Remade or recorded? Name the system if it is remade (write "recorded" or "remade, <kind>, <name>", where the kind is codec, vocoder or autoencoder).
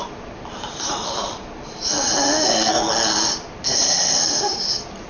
recorded